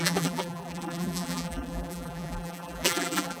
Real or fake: fake